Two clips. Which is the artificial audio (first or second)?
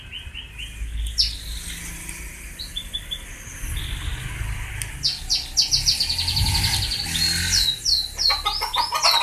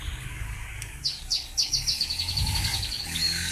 second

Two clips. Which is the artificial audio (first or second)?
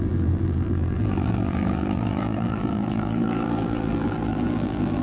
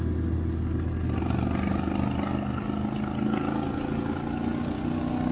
first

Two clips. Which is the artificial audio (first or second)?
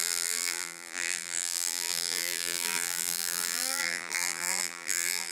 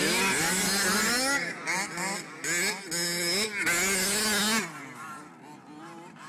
first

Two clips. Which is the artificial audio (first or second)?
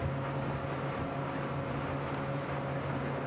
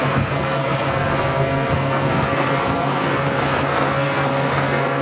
second